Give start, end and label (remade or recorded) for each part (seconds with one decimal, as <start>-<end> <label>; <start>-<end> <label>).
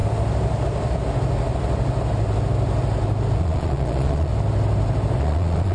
0.0-3.4 recorded; 3.4-4.3 remade; 4.3-5.2 recorded; 5.2-5.7 remade